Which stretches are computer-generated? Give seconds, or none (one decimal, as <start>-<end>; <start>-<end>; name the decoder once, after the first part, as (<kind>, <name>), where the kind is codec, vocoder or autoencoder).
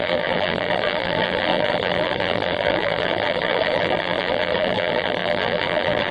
0.0-6.1 (vocoder, BigVGAN v2)